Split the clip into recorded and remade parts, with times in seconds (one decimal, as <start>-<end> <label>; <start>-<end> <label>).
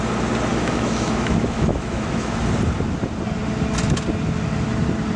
0.0-0.5 recorded; 0.5-2.4 remade; 2.4-5.2 recorded